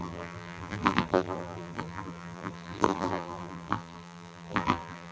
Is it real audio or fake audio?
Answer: fake